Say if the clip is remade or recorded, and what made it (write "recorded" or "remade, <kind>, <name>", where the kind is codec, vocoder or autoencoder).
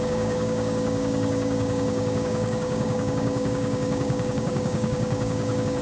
remade, codec, DAC